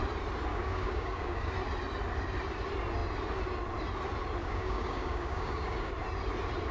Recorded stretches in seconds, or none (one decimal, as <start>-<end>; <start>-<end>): 0.0-0.5; 1.5-4.4; 5.9-6.7